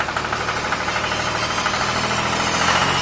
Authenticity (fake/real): real